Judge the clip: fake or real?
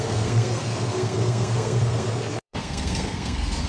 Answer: fake